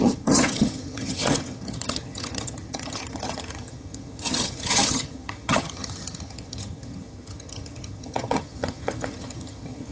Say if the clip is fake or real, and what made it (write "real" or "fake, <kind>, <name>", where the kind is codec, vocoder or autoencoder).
fake, vocoder, HiFi-GAN